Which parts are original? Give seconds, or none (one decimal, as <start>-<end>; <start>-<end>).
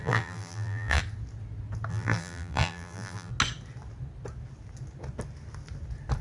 1.0-1.9; 3.3-6.2